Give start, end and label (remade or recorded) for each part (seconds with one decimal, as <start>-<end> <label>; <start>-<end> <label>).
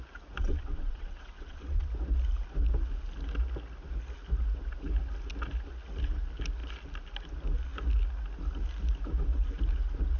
0.0-0.4 recorded; 0.4-1.9 remade; 1.9-10.2 recorded